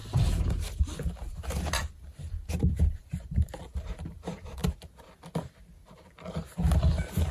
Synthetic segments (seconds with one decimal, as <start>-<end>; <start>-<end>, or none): 2.5-4.6; 6.6-7.3